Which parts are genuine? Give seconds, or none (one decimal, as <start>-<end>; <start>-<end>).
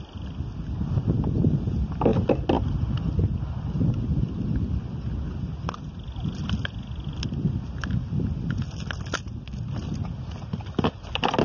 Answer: 0.0-11.4